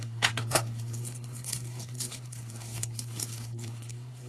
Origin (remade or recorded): remade